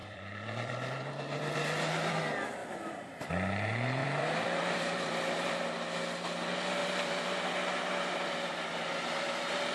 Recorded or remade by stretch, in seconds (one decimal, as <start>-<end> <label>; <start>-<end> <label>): 0.0-2.1 remade; 2.1-2.6 recorded; 2.6-3.3 remade; 3.3-4.0 recorded; 4.0-5.6 remade; 5.6-6.8 recorded; 6.8-7.5 remade; 7.5-9.7 recorded